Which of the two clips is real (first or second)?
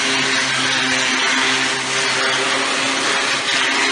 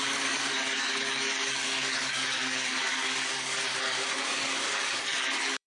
first